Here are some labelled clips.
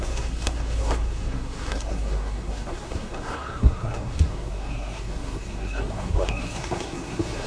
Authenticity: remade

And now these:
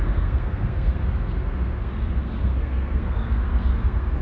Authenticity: remade